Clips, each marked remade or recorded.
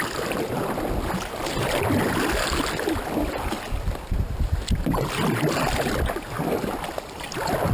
recorded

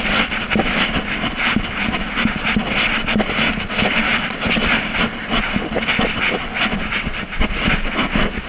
recorded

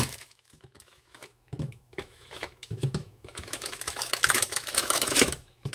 remade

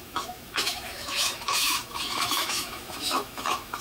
remade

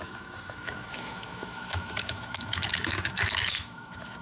remade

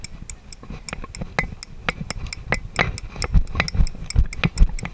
recorded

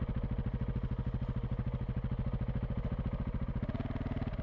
recorded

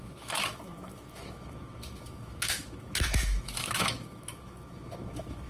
remade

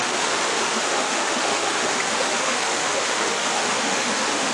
remade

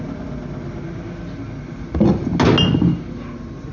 recorded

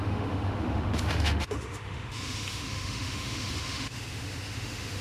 remade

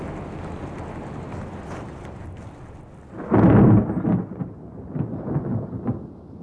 recorded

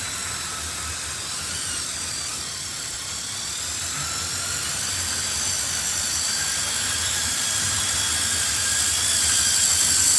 recorded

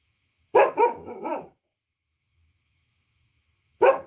remade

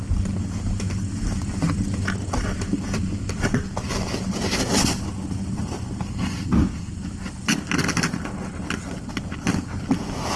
recorded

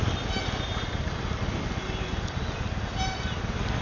recorded